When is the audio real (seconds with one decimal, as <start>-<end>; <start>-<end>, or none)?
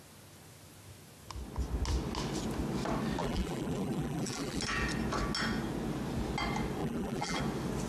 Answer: 0.0-3.2; 4.6-6.8; 7.4-7.9